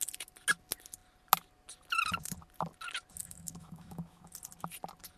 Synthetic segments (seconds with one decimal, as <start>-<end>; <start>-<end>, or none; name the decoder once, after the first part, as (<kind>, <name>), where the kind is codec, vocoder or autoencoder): 3.2-4.3 (autoencoder, DAC-VAE)